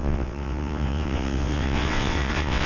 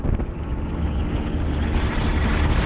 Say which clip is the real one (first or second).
second